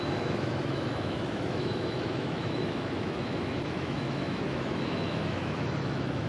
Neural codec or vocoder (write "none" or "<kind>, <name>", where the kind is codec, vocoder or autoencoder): autoencoder, DAC-VAE